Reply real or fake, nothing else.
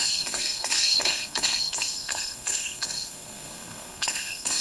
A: fake